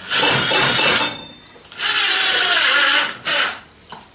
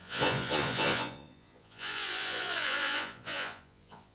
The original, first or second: first